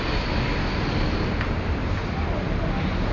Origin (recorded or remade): recorded